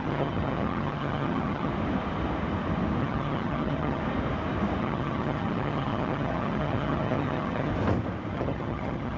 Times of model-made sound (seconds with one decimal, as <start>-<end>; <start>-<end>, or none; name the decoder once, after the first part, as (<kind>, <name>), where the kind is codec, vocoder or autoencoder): 0.0-1.7 (vocoder, HiFi-GAN); 3.0-4.0; 4.8-7.7; 8.3-9.2